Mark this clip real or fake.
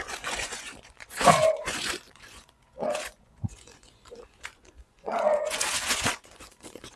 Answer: fake